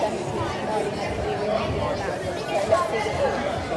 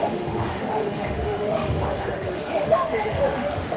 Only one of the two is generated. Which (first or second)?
second